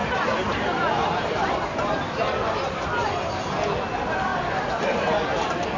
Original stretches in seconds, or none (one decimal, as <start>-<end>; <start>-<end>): 3.5-4.3